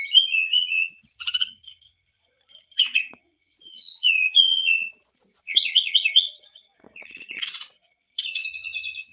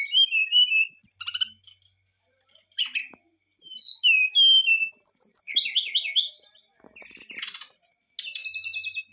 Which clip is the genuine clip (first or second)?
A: second